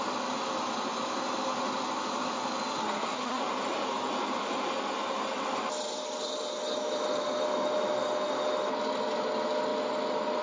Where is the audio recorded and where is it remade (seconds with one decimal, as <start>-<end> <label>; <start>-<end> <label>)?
0.0-2.8 recorded; 2.8-3.4 remade; 3.4-10.4 recorded